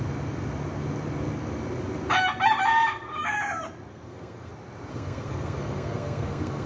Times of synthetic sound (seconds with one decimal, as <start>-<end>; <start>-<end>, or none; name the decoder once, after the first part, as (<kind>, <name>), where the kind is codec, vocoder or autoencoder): 3.9-4.5 (codec, SNAC); 4.9-6.7